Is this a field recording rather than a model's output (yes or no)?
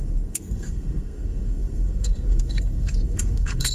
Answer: no